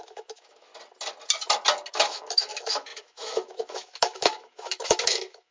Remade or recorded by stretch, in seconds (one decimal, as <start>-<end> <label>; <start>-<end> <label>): 0.0-0.7 remade; 0.7-1.9 recorded; 1.9-5.5 remade